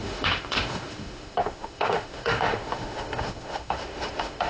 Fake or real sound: fake